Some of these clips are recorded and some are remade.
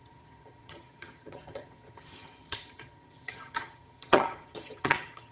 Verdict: remade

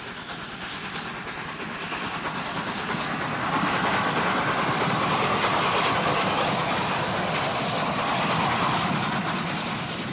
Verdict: recorded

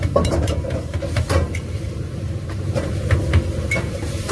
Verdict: remade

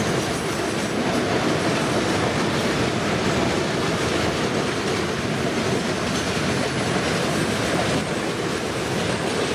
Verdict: recorded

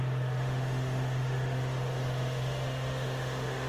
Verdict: remade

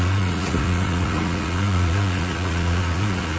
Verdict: remade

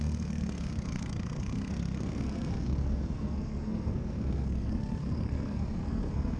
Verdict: remade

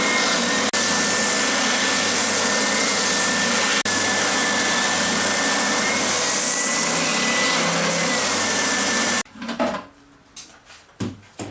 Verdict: recorded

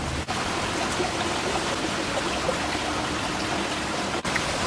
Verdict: recorded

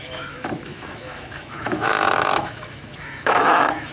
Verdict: remade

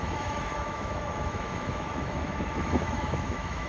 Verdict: remade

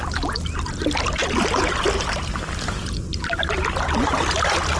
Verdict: recorded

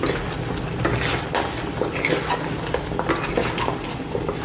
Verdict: recorded